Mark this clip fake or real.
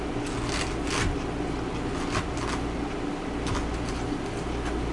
real